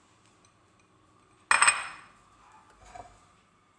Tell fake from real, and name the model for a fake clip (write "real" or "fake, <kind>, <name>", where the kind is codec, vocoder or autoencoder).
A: real